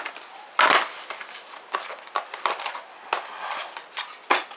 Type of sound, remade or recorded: recorded